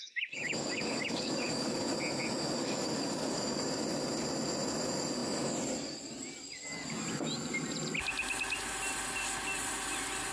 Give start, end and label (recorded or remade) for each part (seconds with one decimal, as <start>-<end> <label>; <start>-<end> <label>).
0.0-1.9 remade; 1.9-2.6 recorded; 2.6-3.6 remade; 3.6-10.3 recorded